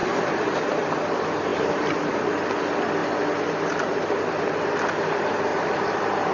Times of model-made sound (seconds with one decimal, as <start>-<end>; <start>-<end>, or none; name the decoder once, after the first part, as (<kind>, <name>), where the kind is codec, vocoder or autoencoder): 0.0-0.6 (vocoder, BigVGAN v2); 1.5-2.3; 5.5-6.3